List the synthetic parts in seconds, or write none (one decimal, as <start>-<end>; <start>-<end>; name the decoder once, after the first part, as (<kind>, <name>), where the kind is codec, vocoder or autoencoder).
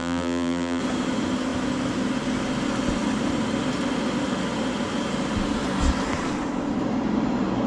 0.0-0.8 (vocoder, BigVGAN v2)